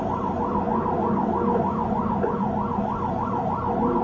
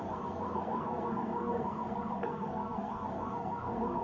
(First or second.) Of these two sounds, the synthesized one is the second